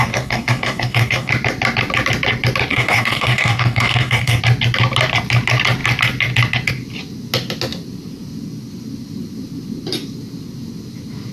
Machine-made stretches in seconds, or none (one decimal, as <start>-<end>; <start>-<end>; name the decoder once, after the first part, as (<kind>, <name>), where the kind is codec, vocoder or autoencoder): 0.0-1.3 (codec, DAC); 2.7-4.4